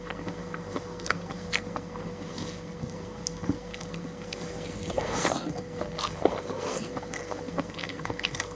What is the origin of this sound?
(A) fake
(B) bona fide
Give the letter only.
A